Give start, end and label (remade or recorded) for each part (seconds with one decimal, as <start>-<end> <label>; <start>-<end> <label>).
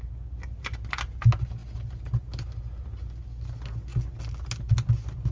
0.0-5.3 recorded